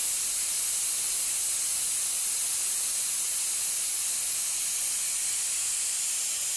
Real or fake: real